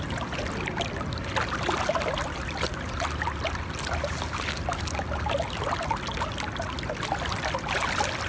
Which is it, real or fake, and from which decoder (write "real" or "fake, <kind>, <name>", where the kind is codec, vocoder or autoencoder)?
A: real